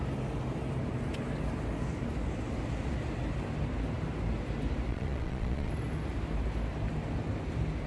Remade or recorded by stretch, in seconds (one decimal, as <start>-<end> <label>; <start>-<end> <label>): 0.0-4.9 recorded; 4.9-5.7 remade; 5.7-7.9 recorded